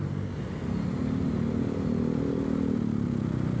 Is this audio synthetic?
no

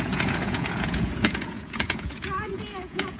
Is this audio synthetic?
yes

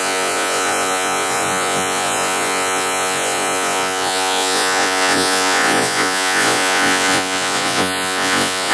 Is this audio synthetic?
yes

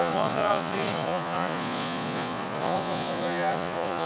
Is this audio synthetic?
yes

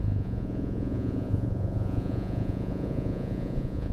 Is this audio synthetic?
yes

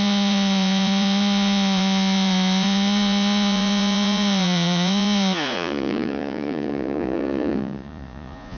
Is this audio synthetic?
yes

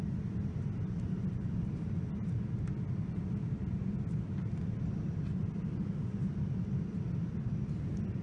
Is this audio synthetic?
no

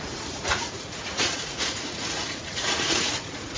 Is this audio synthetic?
yes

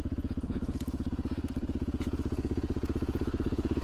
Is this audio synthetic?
yes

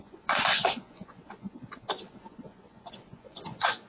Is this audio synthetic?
yes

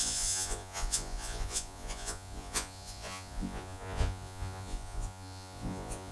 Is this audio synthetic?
yes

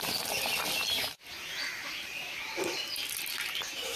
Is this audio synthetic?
no